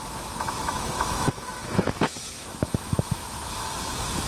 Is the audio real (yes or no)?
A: no